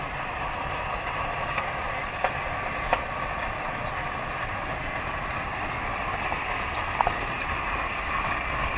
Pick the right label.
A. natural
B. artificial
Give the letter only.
A